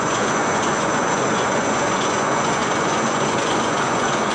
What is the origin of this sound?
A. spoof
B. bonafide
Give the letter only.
A